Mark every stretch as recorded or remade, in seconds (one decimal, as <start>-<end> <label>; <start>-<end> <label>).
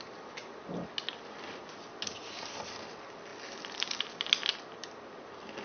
0.0-5.6 recorded